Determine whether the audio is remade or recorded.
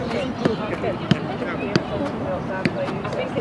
recorded